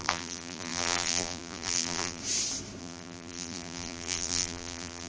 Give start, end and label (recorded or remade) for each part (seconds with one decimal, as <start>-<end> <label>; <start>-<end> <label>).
0.0-2.2 remade; 2.2-2.8 recorded; 2.8-5.1 remade